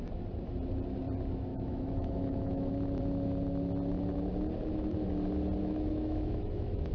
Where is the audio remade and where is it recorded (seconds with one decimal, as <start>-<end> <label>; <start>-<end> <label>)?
0.0-1.5 recorded; 1.5-2.7 remade; 2.7-5.6 recorded; 5.6-6.9 remade